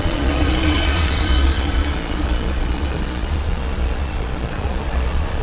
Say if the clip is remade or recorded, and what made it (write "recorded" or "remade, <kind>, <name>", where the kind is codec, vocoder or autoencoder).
remade, vocoder, Vocos